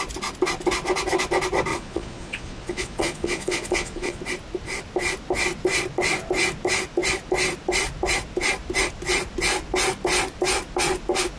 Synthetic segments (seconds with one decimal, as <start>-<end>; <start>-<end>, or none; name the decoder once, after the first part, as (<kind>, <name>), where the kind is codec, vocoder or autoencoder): 1.7-4.2 (vocoder, Vocos)